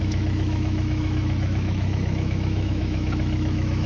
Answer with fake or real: fake